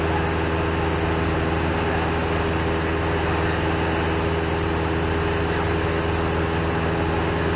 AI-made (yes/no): no